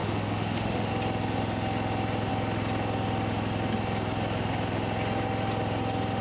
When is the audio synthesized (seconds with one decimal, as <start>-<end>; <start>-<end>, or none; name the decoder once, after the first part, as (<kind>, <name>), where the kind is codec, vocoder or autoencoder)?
0.0-0.9 (autoencoder, DAC-VAE)